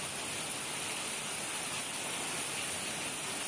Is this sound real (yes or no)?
yes